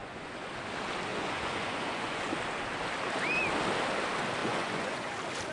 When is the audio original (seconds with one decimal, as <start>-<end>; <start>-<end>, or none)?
0.5-1.1; 2.3-4.4; 5.1-5.5